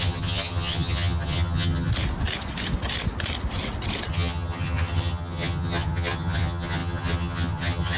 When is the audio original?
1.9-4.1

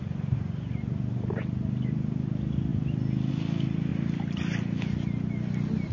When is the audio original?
0.0-5.9

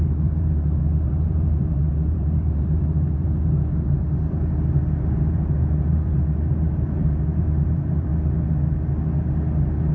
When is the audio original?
8.1-9.9

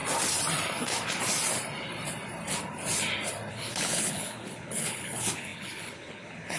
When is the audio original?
0.0-3.5

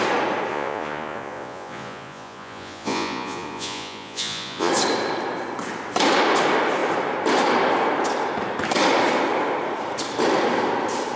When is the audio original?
0.0-0.5; 4.7-11.2

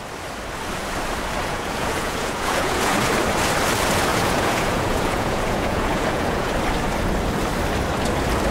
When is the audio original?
0.0-1.4; 3.1-4.1; 6.5-8.5

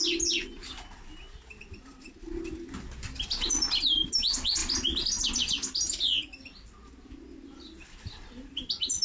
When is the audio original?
0.0-9.0